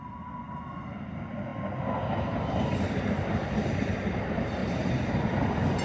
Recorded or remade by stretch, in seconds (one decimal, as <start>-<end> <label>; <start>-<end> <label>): 0.0-5.8 recorded